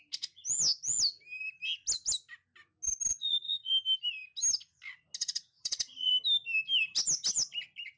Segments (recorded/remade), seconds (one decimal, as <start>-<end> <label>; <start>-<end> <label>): 0.0-3.1 recorded; 3.1-3.7 remade; 3.7-5.2 recorded; 5.2-6.1 remade; 6.1-8.0 recorded